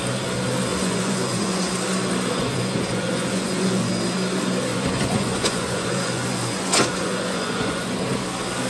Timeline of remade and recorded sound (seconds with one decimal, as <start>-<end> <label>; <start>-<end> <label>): 0.0-0.7 recorded; 0.7-1.7 remade; 1.7-2.3 recorded; 2.3-3.9 remade; 3.9-4.7 recorded; 4.7-8.0 remade; 8.0-8.7 recorded